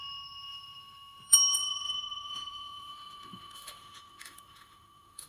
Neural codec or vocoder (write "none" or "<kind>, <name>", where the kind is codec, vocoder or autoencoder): autoencoder, DAC-VAE